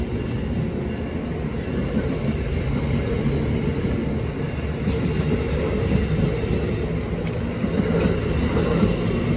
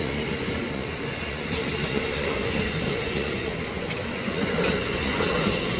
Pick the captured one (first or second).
first